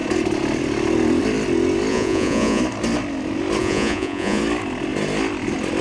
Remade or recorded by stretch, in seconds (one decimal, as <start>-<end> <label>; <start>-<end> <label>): 0.0-1.9 recorded; 1.9-2.6 remade; 2.6-3.6 recorded; 3.6-4.4 remade; 4.4-5.8 recorded